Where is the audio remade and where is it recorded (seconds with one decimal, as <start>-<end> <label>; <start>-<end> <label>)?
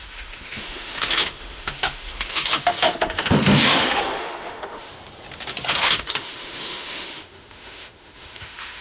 0.0-4.9 remade; 4.9-5.7 recorded; 5.7-8.8 remade